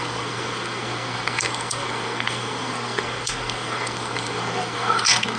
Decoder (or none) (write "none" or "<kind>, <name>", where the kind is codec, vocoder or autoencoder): codec, SNAC